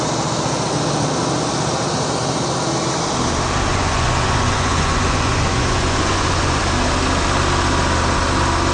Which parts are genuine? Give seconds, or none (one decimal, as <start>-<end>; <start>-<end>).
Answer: 0.0-3.7; 6.6-8.7